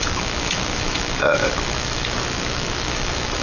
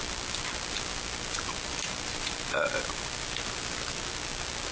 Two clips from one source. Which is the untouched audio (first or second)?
second